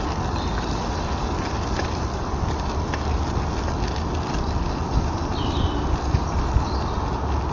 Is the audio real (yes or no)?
yes